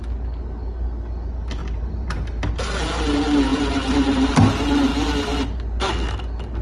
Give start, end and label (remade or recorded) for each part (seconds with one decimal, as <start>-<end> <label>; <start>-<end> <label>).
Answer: 0.0-1.6 recorded; 1.6-2.5 remade; 2.5-3.5 recorded; 3.5-4.3 remade; 4.3-6.6 recorded